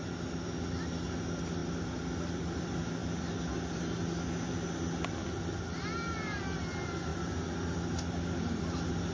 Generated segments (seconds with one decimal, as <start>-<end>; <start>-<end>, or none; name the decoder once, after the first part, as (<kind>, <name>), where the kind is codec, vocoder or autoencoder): none